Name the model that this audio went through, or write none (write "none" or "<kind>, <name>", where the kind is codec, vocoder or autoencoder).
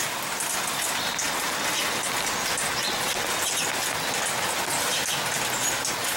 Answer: none